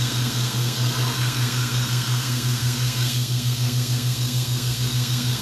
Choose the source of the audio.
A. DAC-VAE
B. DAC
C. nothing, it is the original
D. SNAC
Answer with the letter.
D